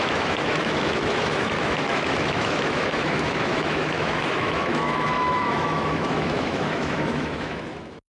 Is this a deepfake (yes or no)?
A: yes